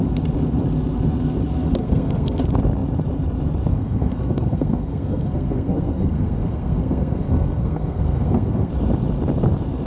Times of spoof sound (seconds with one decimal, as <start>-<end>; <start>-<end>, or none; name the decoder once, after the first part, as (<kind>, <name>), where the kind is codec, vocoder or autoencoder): 1.8-2.4 (codec, SNAC); 3.7-8.7